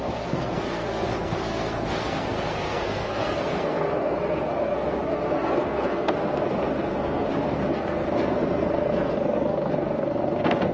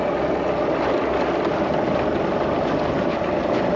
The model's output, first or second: first